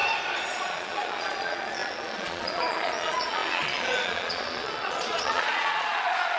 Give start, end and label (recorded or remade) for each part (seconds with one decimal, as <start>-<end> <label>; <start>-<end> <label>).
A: 0.0-0.5 recorded; 0.5-6.4 remade